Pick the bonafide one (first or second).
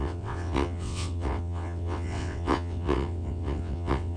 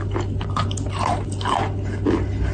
second